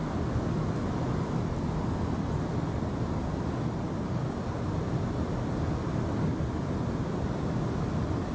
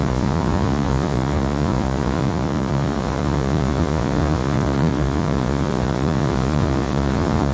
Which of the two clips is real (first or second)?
first